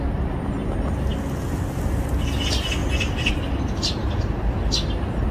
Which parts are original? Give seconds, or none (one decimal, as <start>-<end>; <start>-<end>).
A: 0.0-5.3